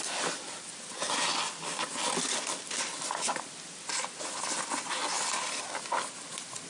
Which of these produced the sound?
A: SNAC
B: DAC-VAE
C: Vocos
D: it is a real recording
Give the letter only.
D